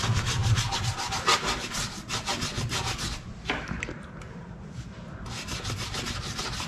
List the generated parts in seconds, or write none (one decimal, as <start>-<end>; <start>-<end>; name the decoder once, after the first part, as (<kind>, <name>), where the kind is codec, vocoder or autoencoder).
none